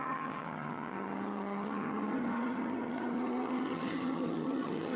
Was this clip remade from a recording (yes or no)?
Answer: yes